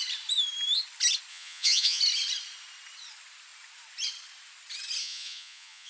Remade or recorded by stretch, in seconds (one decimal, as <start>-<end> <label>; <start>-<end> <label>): 0.0-1.3 recorded; 1.3-2.0 remade; 2.0-5.0 recorded; 5.0-5.9 remade

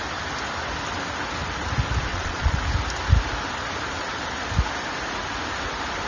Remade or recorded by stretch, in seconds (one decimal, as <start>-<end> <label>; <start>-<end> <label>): 0.0-2.1 recorded; 2.1-2.6 remade; 2.6-6.1 recorded

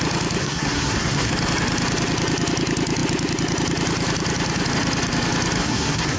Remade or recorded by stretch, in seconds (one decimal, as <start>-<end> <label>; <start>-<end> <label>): 0.0-0.4 recorded; 0.4-1.3 remade; 1.3-5.6 recorded; 5.6-6.2 remade